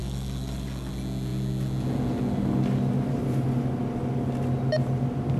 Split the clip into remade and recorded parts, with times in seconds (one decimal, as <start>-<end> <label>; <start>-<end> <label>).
0.0-0.9 remade; 0.9-5.4 recorded